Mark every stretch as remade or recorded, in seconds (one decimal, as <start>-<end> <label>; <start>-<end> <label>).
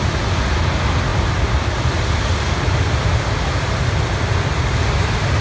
0.0-5.4 recorded